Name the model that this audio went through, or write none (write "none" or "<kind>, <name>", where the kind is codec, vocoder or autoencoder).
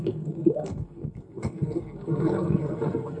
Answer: codec, SNAC